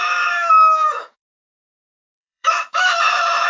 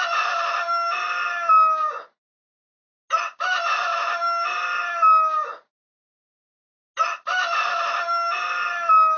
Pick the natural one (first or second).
second